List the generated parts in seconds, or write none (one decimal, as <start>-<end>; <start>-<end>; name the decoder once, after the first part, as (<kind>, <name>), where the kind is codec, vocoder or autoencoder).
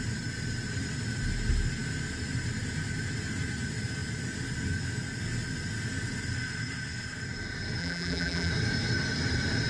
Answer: 7.8-8.5 (vocoder, BigVGAN v2)